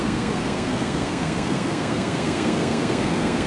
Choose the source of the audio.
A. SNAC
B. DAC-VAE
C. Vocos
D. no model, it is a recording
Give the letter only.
A